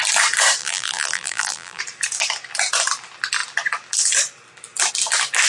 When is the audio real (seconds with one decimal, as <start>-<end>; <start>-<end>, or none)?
0.0-0.6; 1.8-5.5